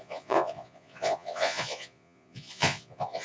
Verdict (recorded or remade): remade